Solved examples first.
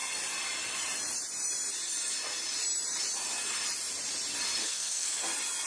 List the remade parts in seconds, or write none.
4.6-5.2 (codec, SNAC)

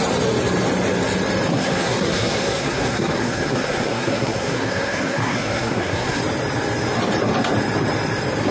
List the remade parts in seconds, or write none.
1.5-6.2 (codec, SNAC)

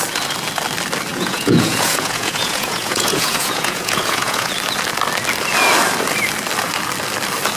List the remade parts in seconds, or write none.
1.1-4.5 (vocoder, Vocos)

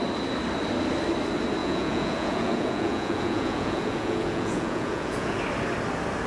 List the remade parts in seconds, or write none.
1.6-5.4 (vocoder, Vocos)